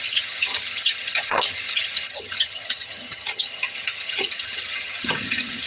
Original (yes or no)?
no